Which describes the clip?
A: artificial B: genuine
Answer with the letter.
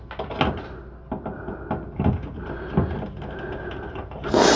B